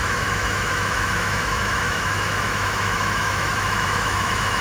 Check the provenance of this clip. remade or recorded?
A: remade